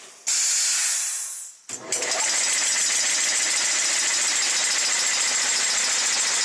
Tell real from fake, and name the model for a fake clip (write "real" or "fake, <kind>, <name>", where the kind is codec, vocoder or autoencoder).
real